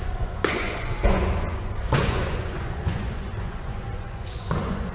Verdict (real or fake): fake